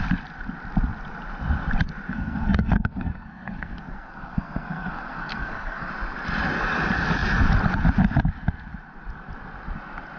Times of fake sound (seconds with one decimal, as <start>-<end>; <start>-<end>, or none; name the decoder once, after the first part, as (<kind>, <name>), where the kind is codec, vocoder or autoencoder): 2.1-5.9 (codec, SNAC)